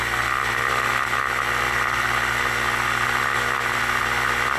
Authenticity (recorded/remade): recorded